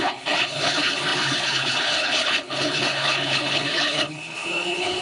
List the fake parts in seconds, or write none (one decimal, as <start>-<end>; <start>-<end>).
0.0-5.0

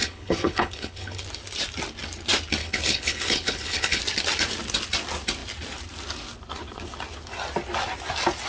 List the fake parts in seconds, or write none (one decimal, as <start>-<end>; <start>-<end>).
0.0-1.2; 2.6-4.0

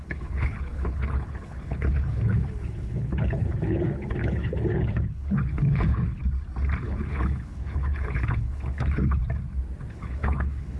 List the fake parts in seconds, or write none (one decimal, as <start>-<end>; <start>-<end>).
0.0-6.2; 6.8-9.2; 9.9-10.8